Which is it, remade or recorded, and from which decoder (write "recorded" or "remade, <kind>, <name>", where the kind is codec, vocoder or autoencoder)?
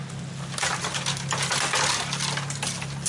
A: recorded